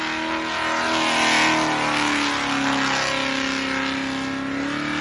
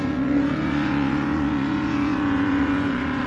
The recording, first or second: first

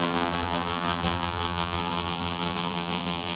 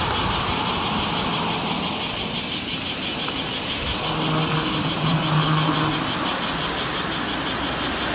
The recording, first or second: second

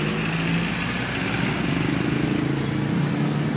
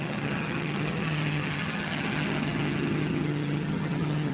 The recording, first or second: first